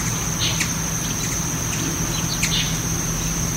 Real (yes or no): yes